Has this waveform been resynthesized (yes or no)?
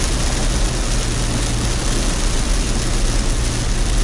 no